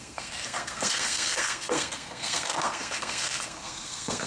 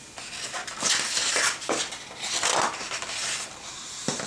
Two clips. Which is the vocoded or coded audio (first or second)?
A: first